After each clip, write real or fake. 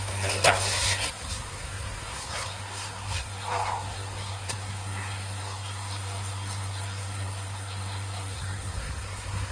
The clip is fake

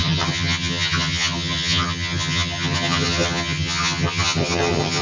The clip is fake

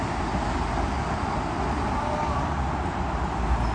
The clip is real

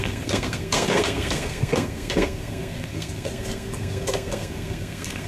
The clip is fake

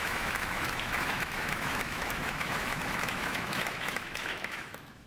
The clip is fake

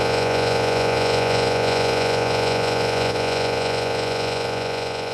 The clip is fake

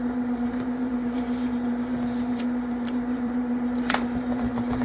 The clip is fake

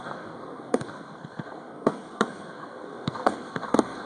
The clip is fake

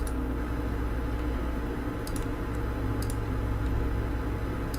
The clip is real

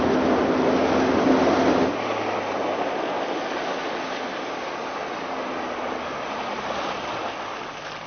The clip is real